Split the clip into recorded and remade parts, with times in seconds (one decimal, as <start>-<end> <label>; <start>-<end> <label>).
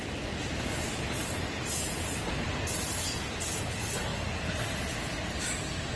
0.0-6.0 recorded